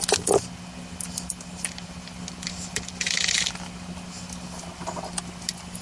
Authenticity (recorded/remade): recorded